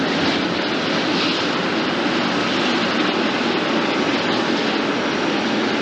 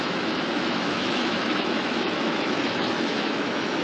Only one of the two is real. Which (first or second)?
first